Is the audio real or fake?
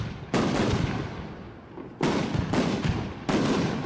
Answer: real